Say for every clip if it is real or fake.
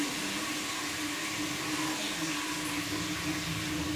real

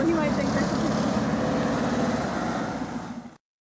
real